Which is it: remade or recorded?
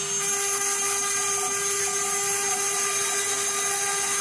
recorded